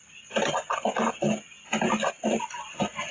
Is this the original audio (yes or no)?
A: yes